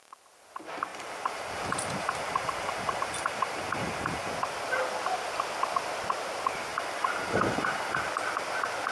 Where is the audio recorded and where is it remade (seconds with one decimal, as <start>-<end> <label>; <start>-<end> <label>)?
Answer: 0.0-0.9 recorded; 0.9-4.3 remade; 4.3-6.7 recorded; 6.7-8.1 remade; 8.1-8.9 recorded